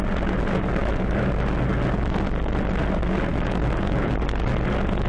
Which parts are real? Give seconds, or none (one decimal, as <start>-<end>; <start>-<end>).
0.0-0.8; 1.3-3.3; 4.1-5.1